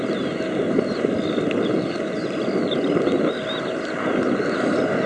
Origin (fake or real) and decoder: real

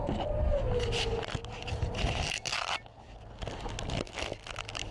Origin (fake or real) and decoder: real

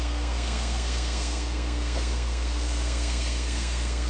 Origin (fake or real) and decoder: fake, codec, SNAC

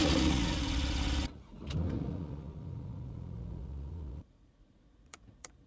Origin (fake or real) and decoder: fake, vocoder, Vocos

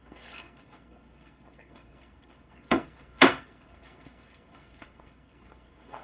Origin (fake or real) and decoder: fake, codec, SNAC